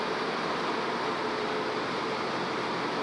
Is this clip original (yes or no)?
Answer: no